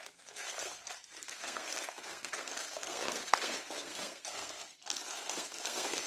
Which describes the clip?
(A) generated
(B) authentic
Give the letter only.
A